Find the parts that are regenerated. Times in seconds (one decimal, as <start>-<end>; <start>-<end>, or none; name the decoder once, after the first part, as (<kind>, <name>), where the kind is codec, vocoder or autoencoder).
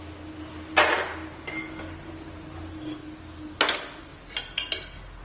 4.1-4.7 (vocoder, BigVGAN v2)